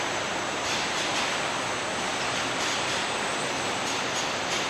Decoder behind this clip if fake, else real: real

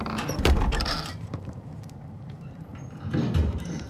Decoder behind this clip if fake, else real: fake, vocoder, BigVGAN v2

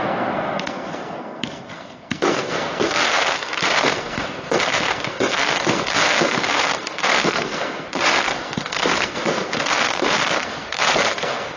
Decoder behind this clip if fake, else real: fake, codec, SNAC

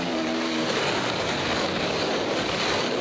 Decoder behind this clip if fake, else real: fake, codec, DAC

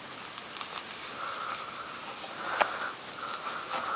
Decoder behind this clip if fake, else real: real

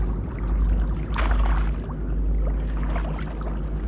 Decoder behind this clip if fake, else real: real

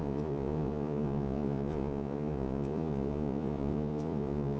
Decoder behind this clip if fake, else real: fake, vocoder, Vocos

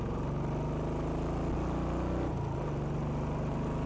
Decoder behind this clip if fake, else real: real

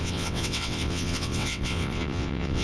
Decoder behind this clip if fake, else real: fake, vocoder, WaveNeXt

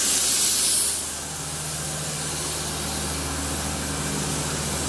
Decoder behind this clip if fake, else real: real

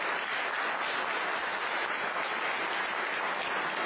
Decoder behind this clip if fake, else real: real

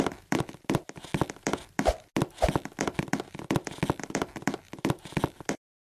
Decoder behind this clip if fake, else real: real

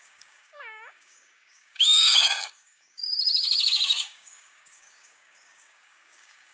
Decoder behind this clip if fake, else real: fake, codec, DAC